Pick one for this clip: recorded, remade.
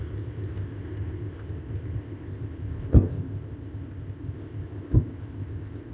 remade